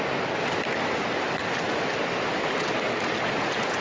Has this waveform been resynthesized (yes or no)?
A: no